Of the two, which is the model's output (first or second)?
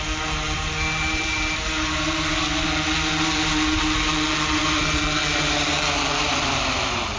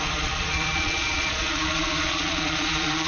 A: second